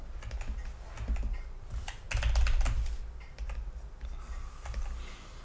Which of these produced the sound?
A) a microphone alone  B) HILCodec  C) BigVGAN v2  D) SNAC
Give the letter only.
A